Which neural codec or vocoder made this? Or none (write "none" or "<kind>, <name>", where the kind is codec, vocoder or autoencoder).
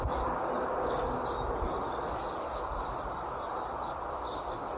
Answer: none